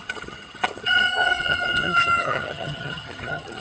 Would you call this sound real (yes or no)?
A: no